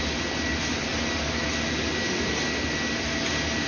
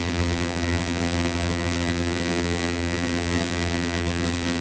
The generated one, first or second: second